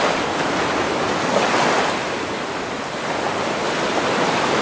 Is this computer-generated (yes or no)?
no